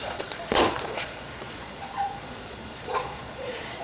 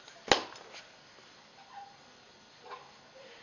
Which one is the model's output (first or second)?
first